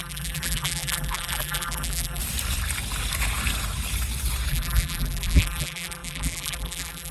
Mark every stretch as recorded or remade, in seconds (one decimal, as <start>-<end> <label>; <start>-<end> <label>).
0.0-2.2 remade; 2.2-4.5 recorded; 4.5-7.1 remade